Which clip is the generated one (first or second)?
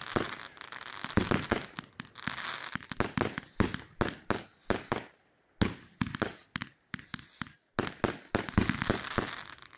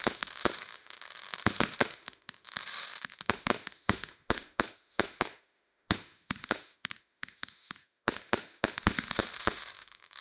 second